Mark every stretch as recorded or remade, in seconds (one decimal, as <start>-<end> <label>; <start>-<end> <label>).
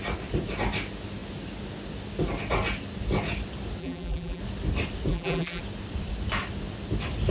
0.0-3.8 recorded; 3.8-4.4 remade; 4.4-5.1 recorded; 5.1-5.6 remade; 5.6-7.3 recorded